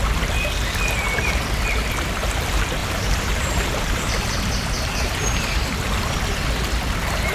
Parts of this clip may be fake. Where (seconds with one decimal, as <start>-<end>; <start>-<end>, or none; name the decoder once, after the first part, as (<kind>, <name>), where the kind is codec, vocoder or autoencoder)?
2.8-5.6 (vocoder, BigVGAN v2)